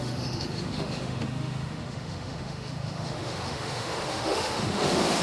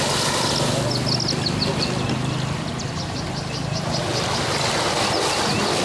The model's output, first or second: first